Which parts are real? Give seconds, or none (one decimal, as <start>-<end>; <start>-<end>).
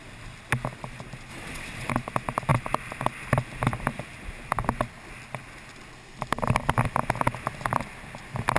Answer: 0.0-1.3; 1.9-8.6